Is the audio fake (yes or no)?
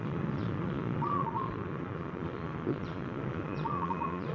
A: yes